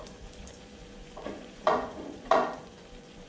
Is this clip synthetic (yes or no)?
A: yes